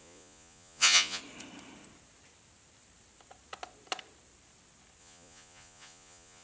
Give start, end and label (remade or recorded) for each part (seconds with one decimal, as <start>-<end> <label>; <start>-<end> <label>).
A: 0.0-1.2 remade; 1.2-5.0 recorded; 5.0-6.4 remade